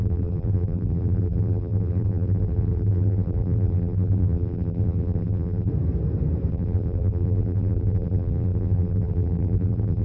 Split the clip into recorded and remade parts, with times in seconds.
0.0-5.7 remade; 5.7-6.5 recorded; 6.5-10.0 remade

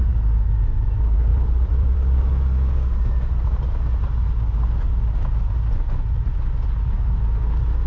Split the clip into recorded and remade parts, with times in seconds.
0.0-1.3 recorded; 1.3-2.2 remade; 2.2-7.9 recorded

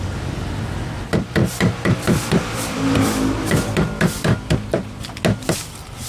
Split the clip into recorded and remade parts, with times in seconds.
0.0-1.4 recorded; 1.4-5.1 remade; 5.1-6.1 recorded

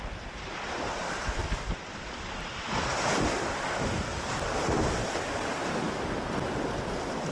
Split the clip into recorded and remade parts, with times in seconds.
0.0-7.3 recorded

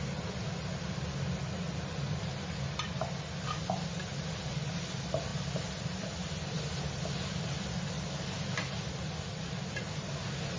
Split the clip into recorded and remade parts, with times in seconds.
0.0-10.6 recorded

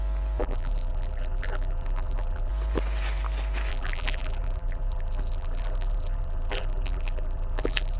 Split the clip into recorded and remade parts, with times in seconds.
0.0-0.4 recorded; 0.4-2.5 remade; 2.5-3.7 recorded; 3.7-8.0 remade